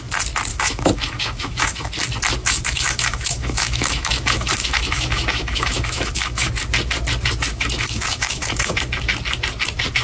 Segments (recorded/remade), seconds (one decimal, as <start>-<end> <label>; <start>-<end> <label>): 0.0-0.5 recorded; 0.5-1.9 remade; 1.9-2.4 recorded; 2.4-6.5 remade; 6.5-7.5 recorded; 7.5-8.7 remade; 8.7-10.0 recorded